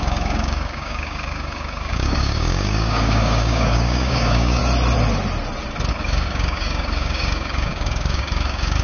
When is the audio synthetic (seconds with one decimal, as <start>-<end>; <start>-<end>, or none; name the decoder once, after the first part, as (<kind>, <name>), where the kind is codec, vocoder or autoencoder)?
0.0-4.6 (codec, DAC); 5.9-8.8